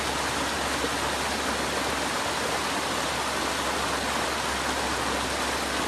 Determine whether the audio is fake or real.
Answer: real